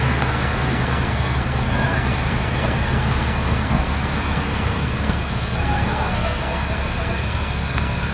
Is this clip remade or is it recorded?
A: remade